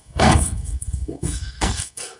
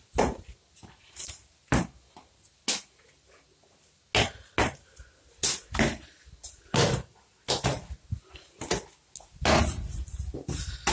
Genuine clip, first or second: second